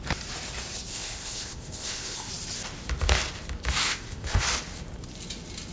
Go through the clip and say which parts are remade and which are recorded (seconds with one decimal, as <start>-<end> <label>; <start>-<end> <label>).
0.0-0.9 recorded; 0.9-2.3 remade; 2.3-3.8 recorded; 3.8-4.4 remade; 4.4-5.7 recorded